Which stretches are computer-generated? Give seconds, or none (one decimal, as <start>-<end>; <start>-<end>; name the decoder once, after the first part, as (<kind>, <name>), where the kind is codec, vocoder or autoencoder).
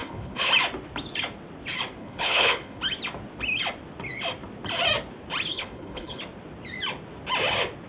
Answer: 0.0-0.5 (codec, HILCodec); 2.0-2.8; 5.5-6.2